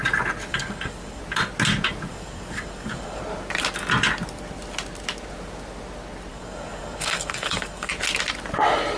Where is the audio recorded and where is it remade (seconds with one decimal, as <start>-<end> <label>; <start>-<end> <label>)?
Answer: 0.0-0.5 recorded; 0.5-1.2 remade; 1.2-2.1 recorded; 2.1-3.2 remade; 3.2-6.3 recorded; 6.3-7.9 remade; 7.9-9.0 recorded